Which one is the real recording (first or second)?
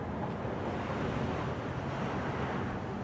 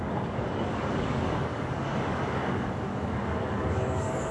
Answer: first